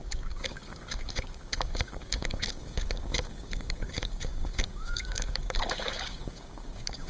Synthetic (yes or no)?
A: yes